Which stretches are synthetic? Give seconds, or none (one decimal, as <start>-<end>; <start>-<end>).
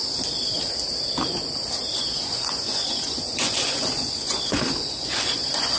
2.0-5.8